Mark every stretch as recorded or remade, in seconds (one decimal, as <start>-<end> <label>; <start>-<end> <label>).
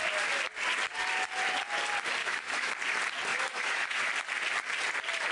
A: 0.0-2.2 recorded; 2.2-2.7 remade; 2.7-3.3 recorded; 3.3-4.1 remade; 4.1-5.3 recorded